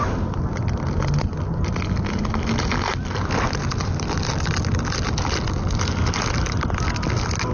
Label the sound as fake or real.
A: real